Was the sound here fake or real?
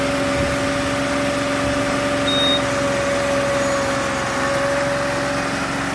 real